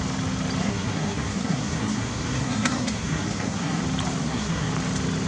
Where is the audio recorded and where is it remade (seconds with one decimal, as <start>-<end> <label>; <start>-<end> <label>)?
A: 0.0-0.6 recorded; 0.6-3.8 remade; 3.8-4.2 recorded; 4.2-4.7 remade; 4.7-5.3 recorded